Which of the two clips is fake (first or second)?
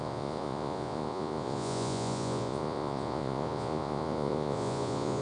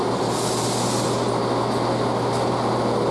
first